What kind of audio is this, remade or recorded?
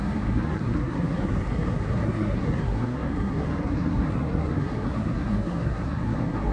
remade